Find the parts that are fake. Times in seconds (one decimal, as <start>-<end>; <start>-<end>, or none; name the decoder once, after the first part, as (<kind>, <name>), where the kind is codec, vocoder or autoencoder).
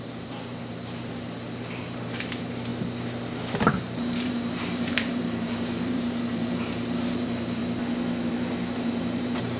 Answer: 0.0-2.7 (vocoder, BigVGAN v2); 3.6-7.6; 8.3-9.6